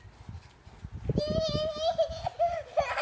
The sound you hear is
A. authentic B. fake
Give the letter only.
A